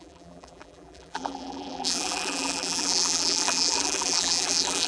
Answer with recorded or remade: remade